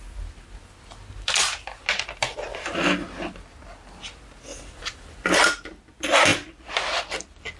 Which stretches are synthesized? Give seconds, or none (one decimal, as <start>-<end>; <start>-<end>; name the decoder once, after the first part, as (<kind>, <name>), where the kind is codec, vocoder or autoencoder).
none